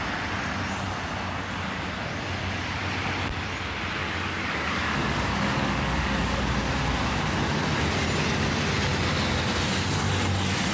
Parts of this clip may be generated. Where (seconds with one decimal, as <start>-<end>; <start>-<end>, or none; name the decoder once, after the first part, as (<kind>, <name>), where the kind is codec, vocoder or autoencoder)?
4.0-6.4 (codec, DAC)